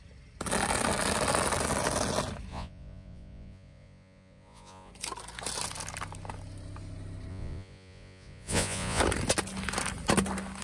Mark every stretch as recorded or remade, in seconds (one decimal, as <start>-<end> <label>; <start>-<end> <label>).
0.0-2.5 recorded; 2.5-4.9 remade; 4.9-7.3 recorded; 7.3-9.0 remade; 9.0-10.6 recorded